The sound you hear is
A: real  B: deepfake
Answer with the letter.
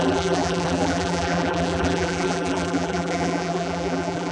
B